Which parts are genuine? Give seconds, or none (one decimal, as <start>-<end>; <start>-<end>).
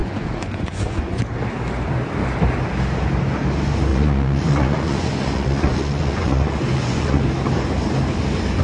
1.2-3.9; 7.2-8.6